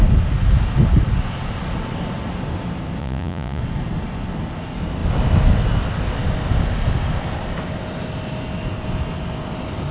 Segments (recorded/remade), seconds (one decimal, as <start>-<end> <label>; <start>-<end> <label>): 0.0-3.0 recorded; 3.0-3.6 remade; 3.6-9.9 recorded